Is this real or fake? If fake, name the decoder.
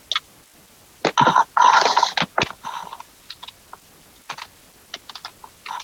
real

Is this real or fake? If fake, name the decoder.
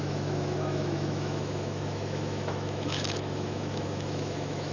fake, autoencoder, DAC-VAE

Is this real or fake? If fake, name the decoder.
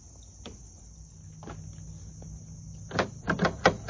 real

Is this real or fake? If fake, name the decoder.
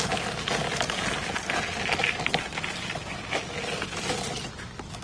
real